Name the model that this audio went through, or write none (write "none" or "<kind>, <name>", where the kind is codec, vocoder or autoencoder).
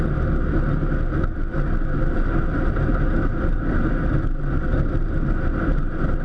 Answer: none